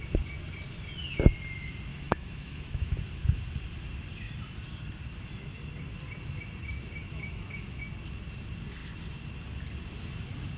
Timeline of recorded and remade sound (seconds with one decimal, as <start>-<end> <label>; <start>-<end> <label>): 0.0-1.9 recorded; 1.9-3.0 remade; 3.0-7.0 recorded; 7.0-7.8 remade; 7.8-10.6 recorded